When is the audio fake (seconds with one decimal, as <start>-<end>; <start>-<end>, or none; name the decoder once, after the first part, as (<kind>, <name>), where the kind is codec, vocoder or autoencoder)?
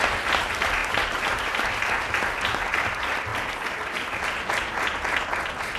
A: none